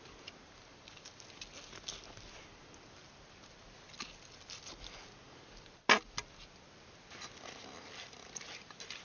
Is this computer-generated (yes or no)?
no